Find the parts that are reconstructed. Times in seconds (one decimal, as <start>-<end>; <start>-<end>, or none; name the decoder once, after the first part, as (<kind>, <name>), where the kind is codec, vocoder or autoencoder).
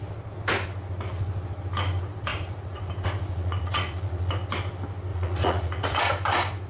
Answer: 2.3-4.3 (vocoder, Vocos); 5.1-6.0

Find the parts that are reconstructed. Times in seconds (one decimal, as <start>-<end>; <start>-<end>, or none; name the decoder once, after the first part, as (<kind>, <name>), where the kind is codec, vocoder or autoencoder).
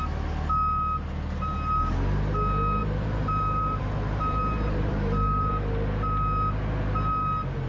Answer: 2.8-5.5 (vocoder, BigVGAN v2)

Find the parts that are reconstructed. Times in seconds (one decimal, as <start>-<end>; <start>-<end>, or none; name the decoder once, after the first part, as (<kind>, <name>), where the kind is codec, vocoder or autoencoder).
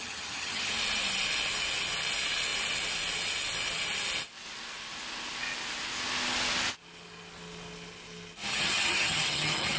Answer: 0.0-0.7 (vocoder, HiFi-GAN); 8.5-9.8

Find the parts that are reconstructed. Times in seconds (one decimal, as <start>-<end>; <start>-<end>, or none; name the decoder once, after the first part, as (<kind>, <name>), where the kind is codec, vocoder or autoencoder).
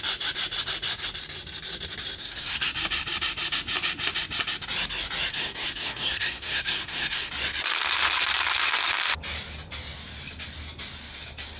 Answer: 2.2-2.7 (codec, SNAC); 5.3-7.3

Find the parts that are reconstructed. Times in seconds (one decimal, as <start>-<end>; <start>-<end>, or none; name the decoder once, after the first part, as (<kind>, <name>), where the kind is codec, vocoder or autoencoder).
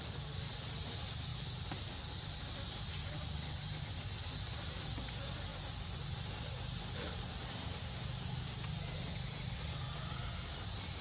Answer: none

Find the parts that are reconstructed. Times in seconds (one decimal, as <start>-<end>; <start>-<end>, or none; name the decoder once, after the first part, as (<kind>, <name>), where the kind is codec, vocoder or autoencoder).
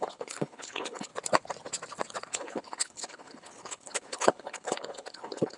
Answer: 0.0-1.1 (codec, HILCodec); 2.3-5.6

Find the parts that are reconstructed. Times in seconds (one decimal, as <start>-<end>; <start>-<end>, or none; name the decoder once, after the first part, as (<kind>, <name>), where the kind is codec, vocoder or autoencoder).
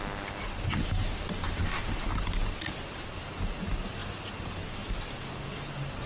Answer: none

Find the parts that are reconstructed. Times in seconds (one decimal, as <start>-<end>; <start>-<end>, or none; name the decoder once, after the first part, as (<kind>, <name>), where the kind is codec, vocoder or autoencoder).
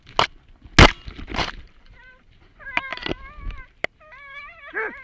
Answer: 1.4-2.3 (vocoder, BigVGAN v2)